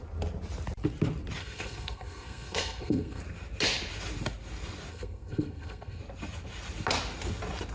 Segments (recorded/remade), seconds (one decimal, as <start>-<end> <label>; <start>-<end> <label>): 0.0-1.4 recorded; 1.4-3.2 remade; 3.2-4.9 recorded; 4.9-6.0 remade; 6.0-7.7 recorded